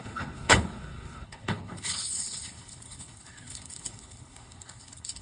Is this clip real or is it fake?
fake